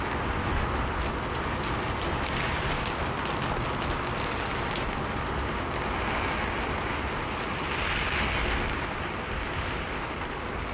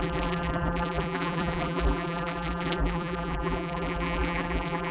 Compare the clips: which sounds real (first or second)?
first